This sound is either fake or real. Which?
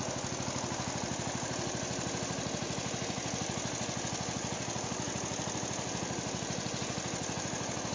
real